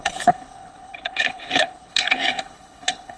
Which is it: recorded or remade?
remade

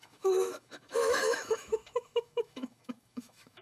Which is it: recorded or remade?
remade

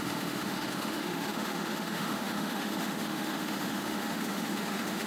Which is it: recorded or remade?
remade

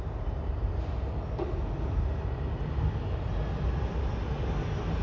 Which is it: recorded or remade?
recorded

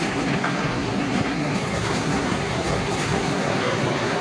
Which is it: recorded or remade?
remade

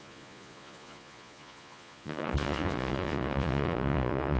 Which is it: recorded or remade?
remade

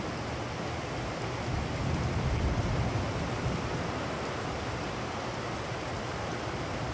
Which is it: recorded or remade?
recorded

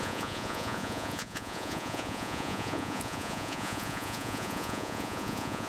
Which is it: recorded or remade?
remade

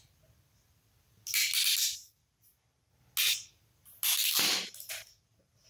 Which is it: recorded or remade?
recorded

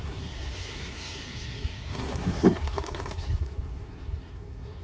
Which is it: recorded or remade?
remade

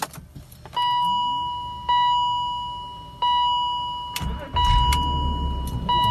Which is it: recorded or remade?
recorded